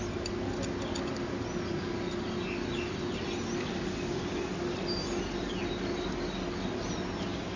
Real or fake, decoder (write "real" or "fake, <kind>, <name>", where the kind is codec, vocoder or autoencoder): real